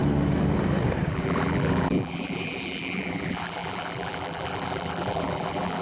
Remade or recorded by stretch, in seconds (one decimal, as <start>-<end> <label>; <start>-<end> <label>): 0.0-1.1 recorded; 1.1-5.8 remade